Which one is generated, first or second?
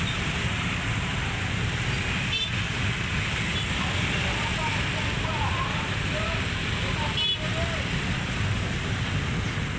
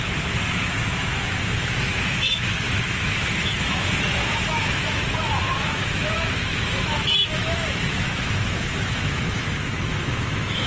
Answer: second